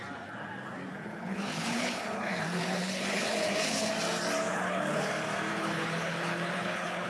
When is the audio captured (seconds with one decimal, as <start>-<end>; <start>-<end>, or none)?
0.0-0.9; 3.9-4.5; 5.1-5.5